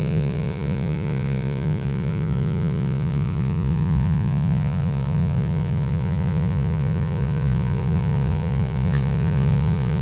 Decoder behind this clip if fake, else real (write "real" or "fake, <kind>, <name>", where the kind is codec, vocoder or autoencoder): fake, vocoder, Vocos